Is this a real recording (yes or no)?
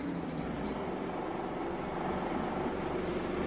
yes